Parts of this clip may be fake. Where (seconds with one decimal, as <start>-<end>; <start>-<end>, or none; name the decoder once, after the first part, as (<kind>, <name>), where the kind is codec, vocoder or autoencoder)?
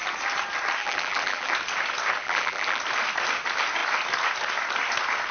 0.8-1.5 (vocoder, BigVGAN v2); 2.2-2.8